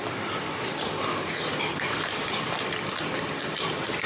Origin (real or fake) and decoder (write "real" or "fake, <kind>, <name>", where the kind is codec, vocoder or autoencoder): real